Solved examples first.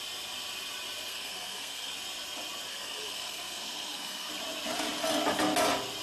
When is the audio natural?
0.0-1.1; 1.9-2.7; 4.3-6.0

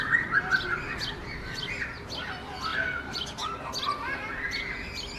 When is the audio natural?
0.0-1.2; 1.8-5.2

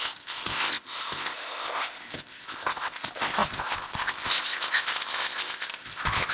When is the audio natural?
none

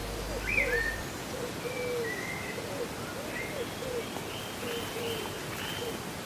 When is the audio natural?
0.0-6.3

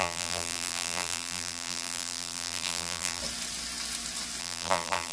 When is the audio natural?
3.2-4.4